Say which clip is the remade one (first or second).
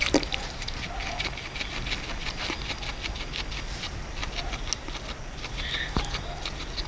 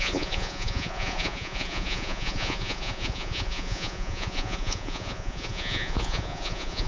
second